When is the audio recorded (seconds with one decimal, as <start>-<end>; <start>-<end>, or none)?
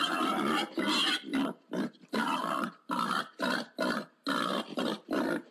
0.0-5.5